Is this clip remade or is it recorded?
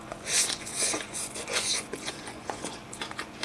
remade